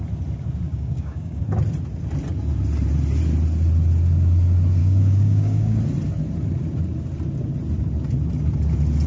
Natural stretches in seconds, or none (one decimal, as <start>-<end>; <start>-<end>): 0.0-0.7; 1.4-4.8; 5.8-9.1